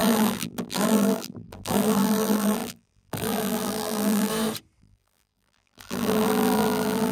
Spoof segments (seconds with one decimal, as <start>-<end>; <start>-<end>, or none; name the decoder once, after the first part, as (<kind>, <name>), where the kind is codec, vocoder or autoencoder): 0.0-4.3 (vocoder, BigVGAN v2); 4.8-7.1